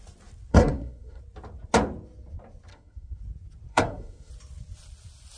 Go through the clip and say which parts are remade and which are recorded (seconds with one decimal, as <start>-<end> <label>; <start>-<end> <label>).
0.0-0.5 recorded; 0.5-1.2 remade; 1.2-2.7 recorded; 2.7-3.2 remade; 3.2-3.7 recorded; 3.7-4.3 remade; 4.3-5.4 recorded

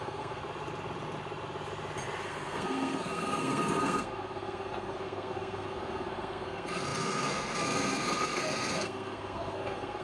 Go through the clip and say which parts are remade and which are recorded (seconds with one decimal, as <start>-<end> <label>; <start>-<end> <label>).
0.0-0.4 remade; 0.4-2.2 recorded; 2.2-10.0 remade

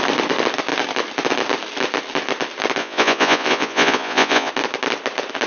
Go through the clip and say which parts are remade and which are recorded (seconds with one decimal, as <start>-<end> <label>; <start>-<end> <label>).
0.0-2.8 recorded; 2.8-4.5 remade; 4.5-5.5 recorded

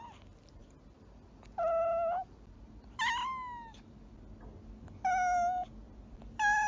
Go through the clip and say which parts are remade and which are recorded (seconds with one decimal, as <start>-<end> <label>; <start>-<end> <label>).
0.0-6.7 recorded